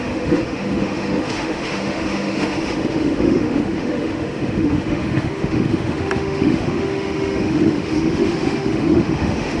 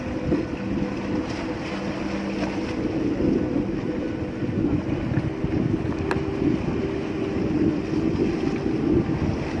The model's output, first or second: first